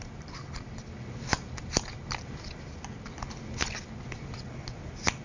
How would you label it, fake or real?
real